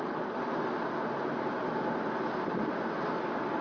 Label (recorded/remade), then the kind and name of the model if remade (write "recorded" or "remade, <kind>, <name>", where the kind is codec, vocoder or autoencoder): recorded